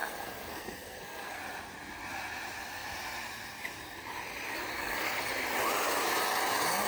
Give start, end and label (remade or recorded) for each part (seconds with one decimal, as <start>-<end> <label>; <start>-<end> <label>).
0.0-1.4 remade; 1.4-4.7 recorded; 4.7-5.3 remade; 5.3-6.9 recorded

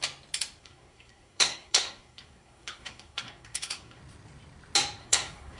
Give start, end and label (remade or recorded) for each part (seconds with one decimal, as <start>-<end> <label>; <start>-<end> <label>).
0.0-0.6 recorded; 0.6-4.0 remade; 4.0-5.0 recorded; 5.0-5.6 remade

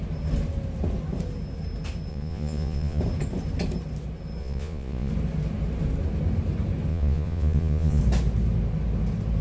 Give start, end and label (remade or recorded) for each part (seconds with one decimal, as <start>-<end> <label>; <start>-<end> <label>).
0.0-2.1 recorded; 2.1-3.0 remade; 3.0-4.4 recorded; 4.4-5.1 remade; 5.1-6.9 recorded; 6.9-8.0 remade; 8.0-9.4 recorded

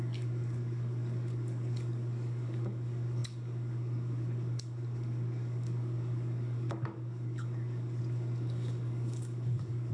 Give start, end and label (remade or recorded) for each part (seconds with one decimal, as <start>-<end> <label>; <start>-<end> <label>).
0.0-9.9 remade